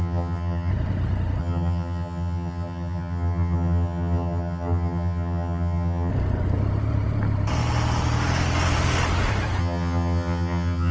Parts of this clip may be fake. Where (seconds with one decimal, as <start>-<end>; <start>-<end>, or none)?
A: 0.0-0.7; 1.4-6.1; 9.6-10.9